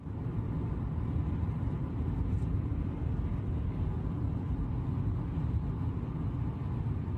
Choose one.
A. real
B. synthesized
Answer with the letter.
A